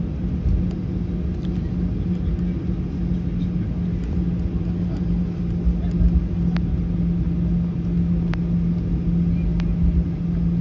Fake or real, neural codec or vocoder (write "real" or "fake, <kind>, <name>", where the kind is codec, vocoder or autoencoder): real